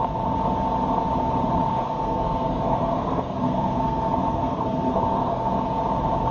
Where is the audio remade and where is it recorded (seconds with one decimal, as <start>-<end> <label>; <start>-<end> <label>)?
0.0-1.7 recorded; 1.7-5.5 remade; 5.5-6.3 recorded